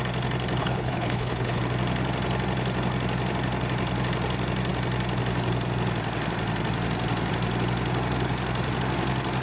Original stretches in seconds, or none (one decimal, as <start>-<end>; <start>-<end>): 0.0-0.6; 1.6-9.4